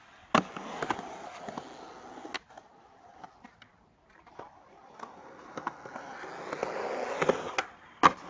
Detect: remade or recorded recorded